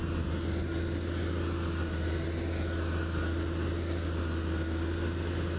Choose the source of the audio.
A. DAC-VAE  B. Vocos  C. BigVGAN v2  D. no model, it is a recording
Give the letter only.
D